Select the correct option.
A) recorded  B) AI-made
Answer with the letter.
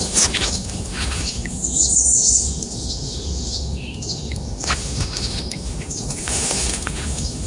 B